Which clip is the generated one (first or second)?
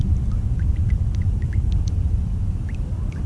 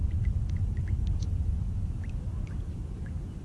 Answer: first